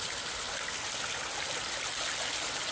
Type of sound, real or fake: real